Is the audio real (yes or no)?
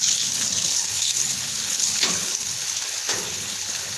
no